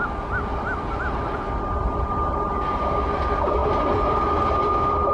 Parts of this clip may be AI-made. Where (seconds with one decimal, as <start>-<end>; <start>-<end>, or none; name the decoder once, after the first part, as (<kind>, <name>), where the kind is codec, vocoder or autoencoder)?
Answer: 3.6-4.4 (vocoder, BigVGAN v2)